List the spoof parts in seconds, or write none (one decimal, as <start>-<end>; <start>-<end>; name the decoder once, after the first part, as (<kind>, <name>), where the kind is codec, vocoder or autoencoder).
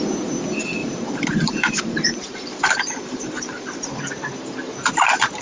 0.8-4.0 (vocoder, BigVGAN v2)